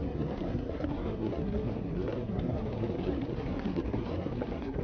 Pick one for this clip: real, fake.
fake